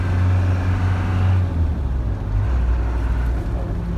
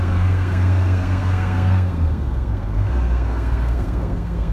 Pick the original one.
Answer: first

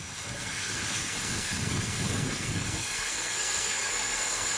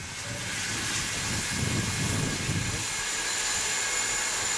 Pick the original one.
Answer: second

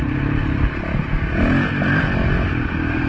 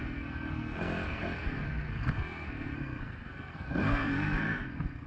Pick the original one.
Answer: first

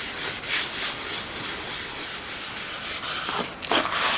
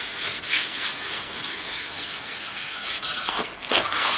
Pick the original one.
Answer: first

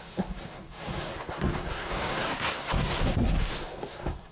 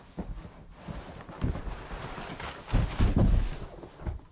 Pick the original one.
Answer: second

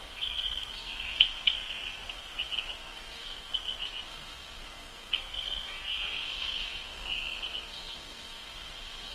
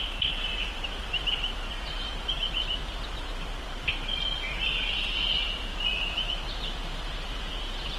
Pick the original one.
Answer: second